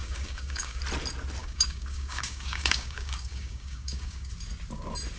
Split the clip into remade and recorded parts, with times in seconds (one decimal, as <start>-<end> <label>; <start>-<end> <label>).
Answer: 0.0-0.8 remade; 0.8-1.4 recorded; 1.4-4.3 remade; 4.3-5.2 recorded